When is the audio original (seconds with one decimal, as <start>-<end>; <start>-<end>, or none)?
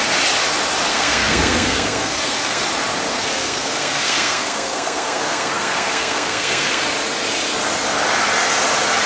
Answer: 0.0-0.9; 2.6-3.1; 6.8-9.1